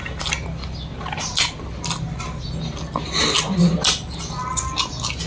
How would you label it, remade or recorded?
recorded